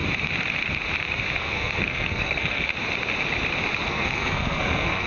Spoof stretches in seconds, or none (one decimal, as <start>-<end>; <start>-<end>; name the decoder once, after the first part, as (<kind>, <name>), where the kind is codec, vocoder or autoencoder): 1.4-2.7 (codec, SNAC); 3.9-5.1